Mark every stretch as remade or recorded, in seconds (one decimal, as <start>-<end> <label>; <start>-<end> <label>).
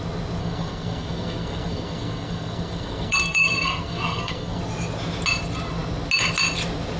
0.0-0.4 recorded; 0.4-4.6 remade; 4.6-7.0 recorded